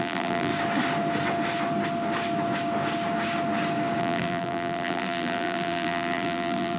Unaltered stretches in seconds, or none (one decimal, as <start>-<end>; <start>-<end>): 0.5-4.0